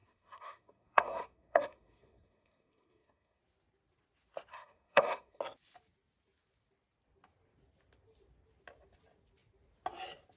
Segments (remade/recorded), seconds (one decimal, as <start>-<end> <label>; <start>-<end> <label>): 0.0-3.4 remade; 3.4-4.5 recorded; 4.5-5.4 remade; 5.4-10.4 recorded